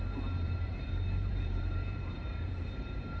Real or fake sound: fake